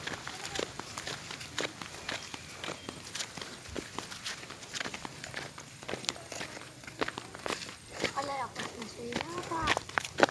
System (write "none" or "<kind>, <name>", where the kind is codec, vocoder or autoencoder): vocoder, BigVGAN v2